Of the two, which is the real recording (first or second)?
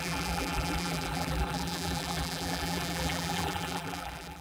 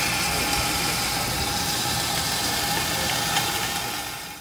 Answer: second